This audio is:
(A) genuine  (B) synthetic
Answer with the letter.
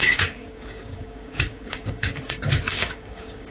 B